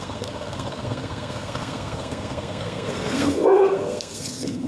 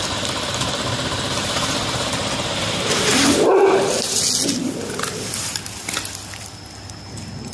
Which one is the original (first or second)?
second